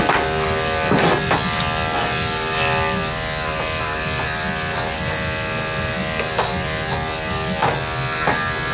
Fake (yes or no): no